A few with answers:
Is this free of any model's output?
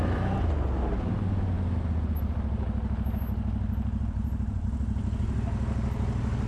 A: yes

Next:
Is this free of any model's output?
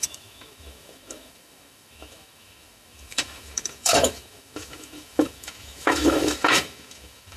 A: no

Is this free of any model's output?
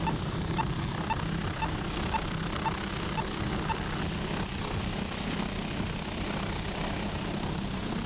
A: yes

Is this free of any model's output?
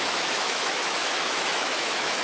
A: no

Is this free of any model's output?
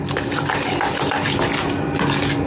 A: yes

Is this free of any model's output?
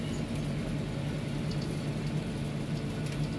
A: yes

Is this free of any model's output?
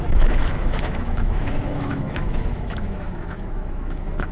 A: no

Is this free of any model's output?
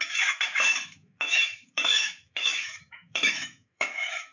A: no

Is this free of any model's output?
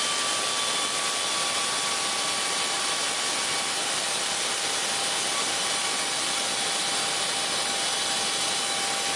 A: yes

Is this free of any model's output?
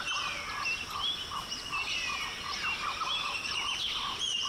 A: yes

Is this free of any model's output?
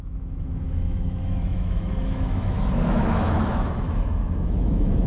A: no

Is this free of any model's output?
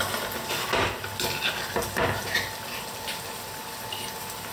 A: yes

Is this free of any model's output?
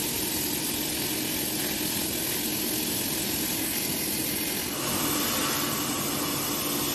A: yes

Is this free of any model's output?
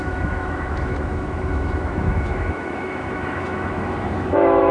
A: no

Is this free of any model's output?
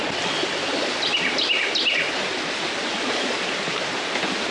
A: yes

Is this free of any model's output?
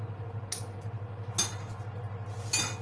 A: yes